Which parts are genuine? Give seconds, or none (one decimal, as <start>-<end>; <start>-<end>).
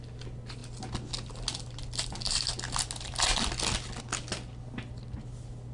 0.0-5.7